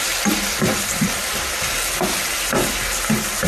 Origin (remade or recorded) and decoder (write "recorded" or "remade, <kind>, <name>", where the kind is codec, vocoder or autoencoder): recorded